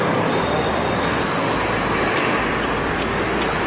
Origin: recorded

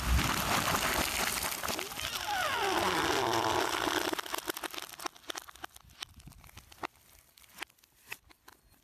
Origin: recorded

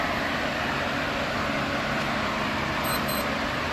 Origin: remade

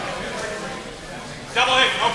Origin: recorded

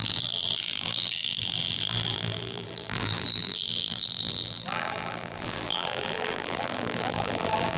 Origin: remade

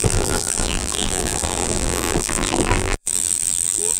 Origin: remade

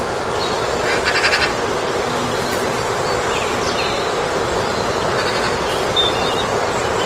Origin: recorded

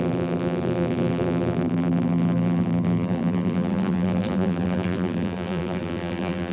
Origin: remade